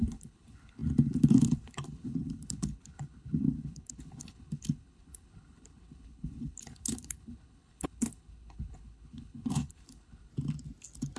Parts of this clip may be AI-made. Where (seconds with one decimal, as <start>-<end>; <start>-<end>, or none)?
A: 0.0-10.3